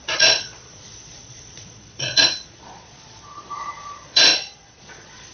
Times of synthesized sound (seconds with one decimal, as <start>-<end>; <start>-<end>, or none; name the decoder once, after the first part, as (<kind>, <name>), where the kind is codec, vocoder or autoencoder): 0.0-5.3 (vocoder, Vocos)